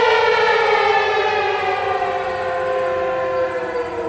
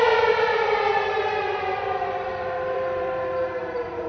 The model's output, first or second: second